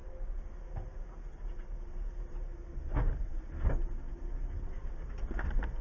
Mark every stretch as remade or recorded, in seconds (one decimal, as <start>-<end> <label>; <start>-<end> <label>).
0.0-5.8 recorded